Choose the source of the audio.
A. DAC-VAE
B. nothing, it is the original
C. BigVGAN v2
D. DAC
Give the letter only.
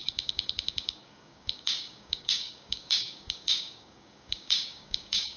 D